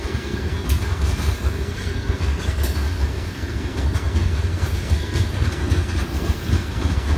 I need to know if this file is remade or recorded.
remade